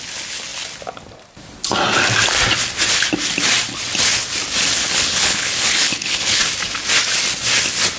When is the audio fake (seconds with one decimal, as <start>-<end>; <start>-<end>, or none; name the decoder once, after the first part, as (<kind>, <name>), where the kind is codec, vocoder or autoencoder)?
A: 4.8-6.4 (codec, HILCodec)